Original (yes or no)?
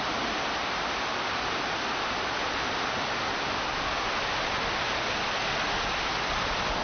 yes